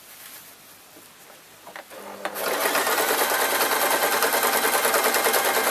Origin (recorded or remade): recorded